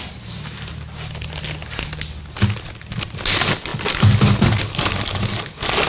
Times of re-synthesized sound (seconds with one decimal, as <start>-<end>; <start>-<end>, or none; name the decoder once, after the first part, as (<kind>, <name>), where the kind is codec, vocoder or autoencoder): none